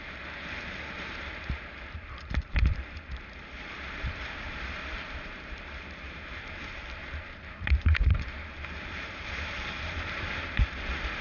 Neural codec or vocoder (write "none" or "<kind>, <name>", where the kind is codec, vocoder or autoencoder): vocoder, BigVGAN v2